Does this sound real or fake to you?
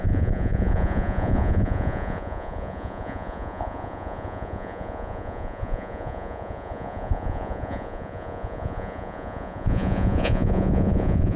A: fake